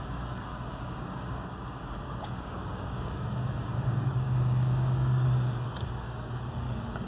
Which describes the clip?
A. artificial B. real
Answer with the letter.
A